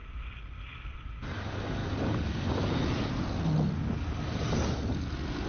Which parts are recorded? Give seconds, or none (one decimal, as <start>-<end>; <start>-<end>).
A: 0.0-5.5